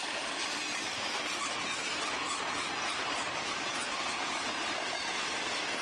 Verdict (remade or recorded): remade